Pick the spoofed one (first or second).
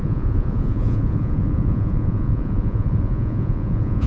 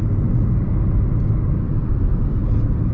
first